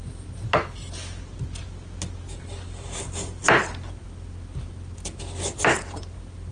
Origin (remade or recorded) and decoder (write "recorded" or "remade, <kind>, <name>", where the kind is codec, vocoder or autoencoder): recorded